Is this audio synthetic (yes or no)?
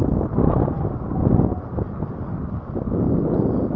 no